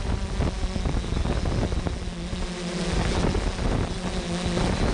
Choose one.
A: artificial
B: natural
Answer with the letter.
B